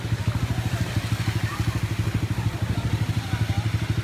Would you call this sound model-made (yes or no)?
no